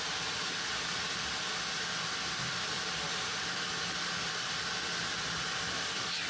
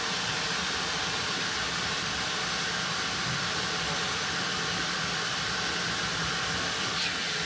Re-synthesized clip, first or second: second